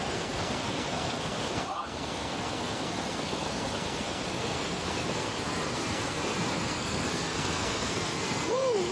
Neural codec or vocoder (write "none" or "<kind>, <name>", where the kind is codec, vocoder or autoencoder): codec, SNAC